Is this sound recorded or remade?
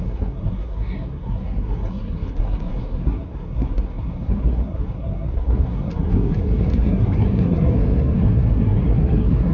remade